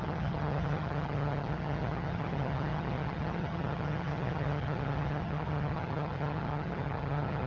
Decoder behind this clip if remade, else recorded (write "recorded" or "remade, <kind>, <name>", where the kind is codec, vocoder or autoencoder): remade, vocoder, HiFi-GAN